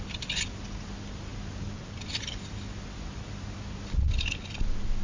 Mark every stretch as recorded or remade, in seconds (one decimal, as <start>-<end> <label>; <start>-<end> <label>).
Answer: 0.0-5.0 recorded